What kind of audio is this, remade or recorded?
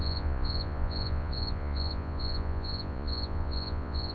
remade